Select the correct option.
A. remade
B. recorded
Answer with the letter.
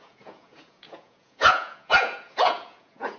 A